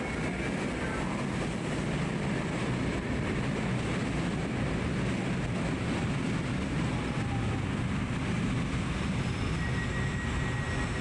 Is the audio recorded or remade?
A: recorded